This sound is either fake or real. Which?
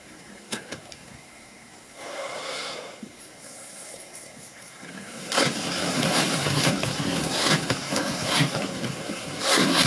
fake